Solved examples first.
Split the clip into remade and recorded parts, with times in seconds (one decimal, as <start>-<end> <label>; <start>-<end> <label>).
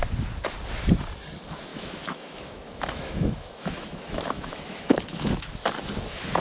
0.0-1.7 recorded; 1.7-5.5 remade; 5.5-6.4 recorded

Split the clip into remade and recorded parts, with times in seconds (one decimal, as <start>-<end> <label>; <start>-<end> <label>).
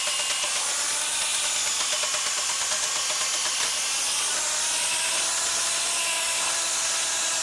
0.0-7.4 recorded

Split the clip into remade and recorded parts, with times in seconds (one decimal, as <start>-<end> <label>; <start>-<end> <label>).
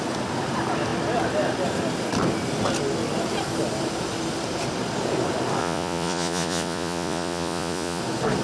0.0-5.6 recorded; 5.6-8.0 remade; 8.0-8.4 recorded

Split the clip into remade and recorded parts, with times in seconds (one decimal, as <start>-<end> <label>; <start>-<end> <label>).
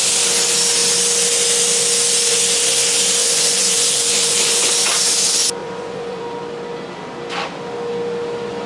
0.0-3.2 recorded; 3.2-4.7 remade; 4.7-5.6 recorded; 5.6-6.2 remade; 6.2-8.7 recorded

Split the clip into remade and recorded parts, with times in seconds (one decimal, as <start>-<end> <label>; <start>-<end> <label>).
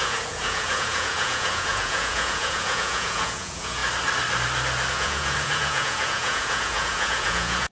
0.0-3.8 remade; 3.8-4.9 recorded; 4.9-7.7 remade